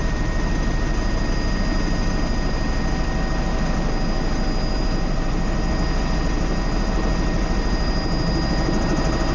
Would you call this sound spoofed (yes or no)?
no